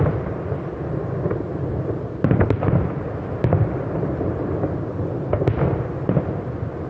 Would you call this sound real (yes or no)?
no